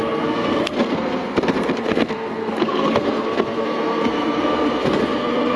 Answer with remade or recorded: remade